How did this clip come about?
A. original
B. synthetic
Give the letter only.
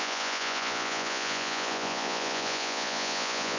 B